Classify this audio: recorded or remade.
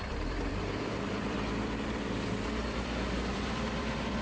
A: remade